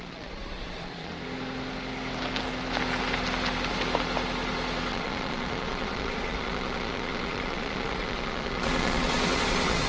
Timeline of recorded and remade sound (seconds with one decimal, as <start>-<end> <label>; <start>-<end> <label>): 0.0-1.1 remade; 1.1-4.9 recorded; 4.9-9.9 remade